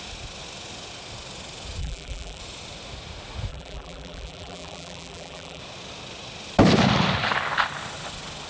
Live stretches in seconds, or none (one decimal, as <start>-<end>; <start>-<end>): 0.0-1.8; 2.4-3.5; 5.6-8.5